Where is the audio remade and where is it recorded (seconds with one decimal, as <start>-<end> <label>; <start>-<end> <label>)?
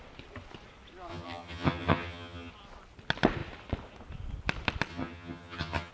0.0-1.1 recorded; 1.1-2.5 remade; 2.5-4.9 recorded; 4.9-5.9 remade